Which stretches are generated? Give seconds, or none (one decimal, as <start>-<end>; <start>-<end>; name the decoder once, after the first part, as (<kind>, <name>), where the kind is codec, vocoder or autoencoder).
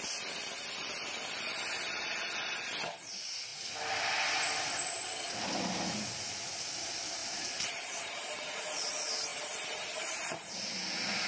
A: 7.2-8.3 (vocoder, BigVGAN v2); 9.3-10.5